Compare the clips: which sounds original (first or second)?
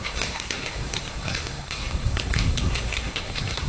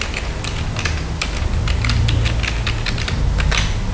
second